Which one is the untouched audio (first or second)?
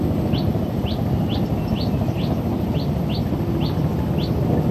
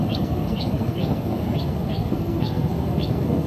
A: first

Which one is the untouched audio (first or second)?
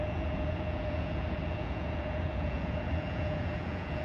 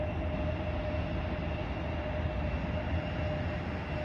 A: second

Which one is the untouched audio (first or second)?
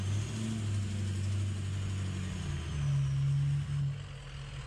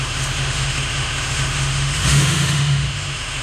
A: first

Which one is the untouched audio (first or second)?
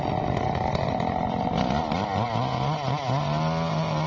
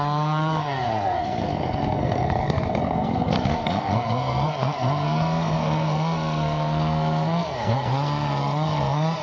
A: first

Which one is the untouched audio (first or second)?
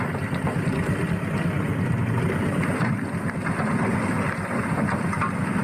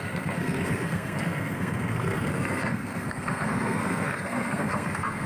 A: first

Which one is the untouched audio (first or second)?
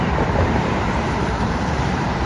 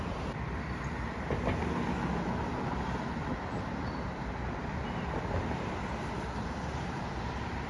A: second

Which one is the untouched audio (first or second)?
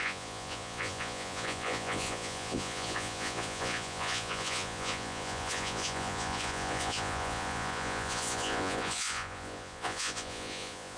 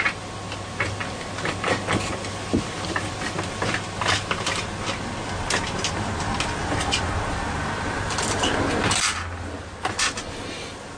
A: second